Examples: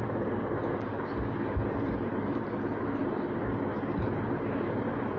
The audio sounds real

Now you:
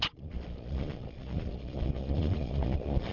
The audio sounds fake